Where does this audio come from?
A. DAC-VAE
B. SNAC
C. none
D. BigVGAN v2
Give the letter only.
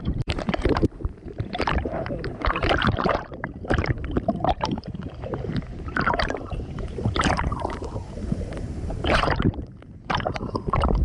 D